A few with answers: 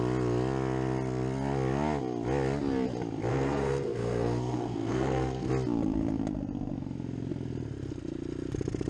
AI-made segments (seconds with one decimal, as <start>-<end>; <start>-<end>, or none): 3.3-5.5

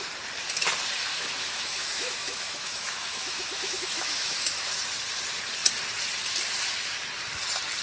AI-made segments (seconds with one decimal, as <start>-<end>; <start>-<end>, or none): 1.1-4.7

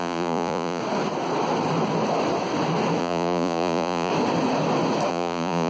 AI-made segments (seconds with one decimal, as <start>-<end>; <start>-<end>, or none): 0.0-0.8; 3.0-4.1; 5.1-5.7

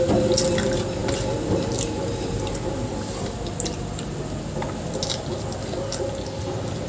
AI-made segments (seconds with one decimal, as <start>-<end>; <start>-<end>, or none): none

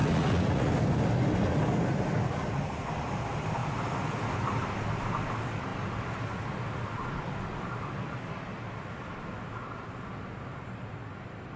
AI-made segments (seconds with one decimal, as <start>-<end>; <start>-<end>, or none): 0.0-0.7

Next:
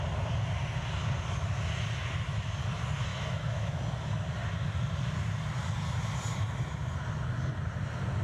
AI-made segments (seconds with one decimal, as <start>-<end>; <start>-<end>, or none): 3.1-3.8